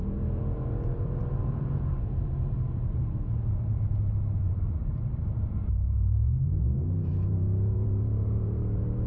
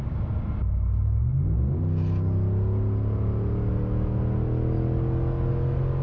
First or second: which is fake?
first